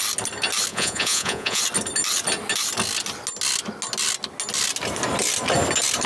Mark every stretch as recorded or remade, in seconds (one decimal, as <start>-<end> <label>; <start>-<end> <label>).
0.0-0.7 recorded; 0.7-1.6 remade; 1.6-6.1 recorded